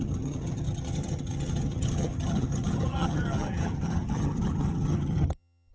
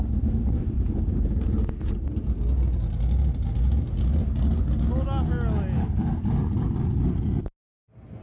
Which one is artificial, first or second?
first